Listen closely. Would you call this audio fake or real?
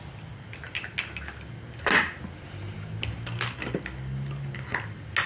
real